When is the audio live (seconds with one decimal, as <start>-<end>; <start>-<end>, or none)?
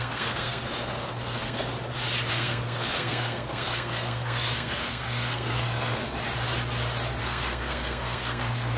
1.7-2.3; 6.0-7.2